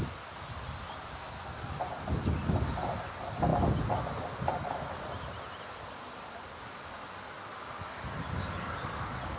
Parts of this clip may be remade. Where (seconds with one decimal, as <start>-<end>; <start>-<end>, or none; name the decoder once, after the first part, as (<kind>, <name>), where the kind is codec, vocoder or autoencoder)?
none